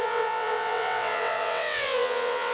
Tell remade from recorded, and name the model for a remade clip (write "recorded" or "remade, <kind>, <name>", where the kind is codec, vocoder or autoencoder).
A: remade, vocoder, WaveNeXt